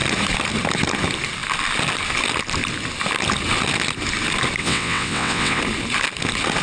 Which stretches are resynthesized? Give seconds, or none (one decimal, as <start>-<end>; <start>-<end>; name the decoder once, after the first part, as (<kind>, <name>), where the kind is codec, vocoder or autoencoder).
4.6-5.6 (vocoder, WaveNeXt)